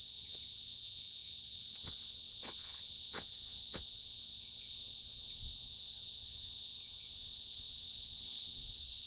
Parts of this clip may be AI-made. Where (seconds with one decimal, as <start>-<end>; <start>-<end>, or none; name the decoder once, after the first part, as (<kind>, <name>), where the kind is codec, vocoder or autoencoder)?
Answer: 0.0-9.1 (vocoder, WaveNeXt)